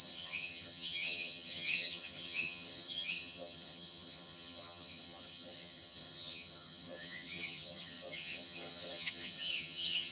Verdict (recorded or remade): remade